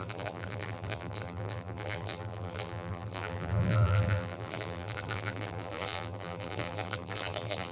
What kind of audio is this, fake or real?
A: fake